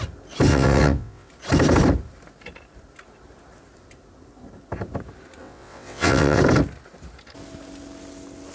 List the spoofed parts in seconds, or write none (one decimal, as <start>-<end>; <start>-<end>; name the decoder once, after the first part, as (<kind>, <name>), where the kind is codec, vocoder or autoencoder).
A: 0.5-1.3 (vocoder, WaveNeXt); 5.4-6.4